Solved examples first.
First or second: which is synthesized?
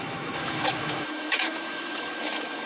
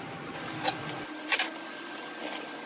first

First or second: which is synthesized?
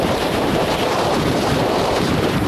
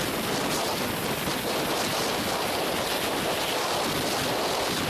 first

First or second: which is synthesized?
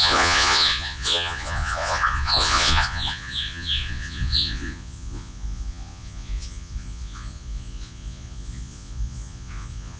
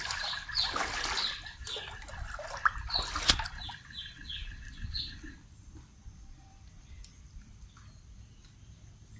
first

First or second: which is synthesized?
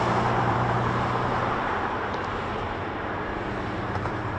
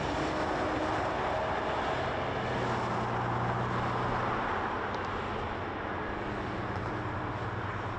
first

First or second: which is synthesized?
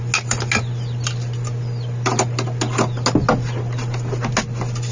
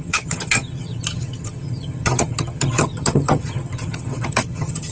second